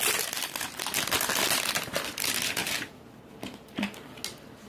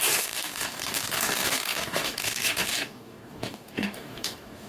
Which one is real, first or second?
first